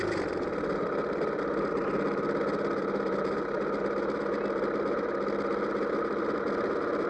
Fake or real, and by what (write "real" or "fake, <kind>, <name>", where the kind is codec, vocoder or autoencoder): real